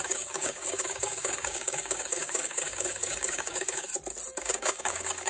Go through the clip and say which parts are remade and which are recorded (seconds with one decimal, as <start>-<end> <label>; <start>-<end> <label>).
0.0-3.9 remade; 3.9-4.4 recorded; 4.4-5.3 remade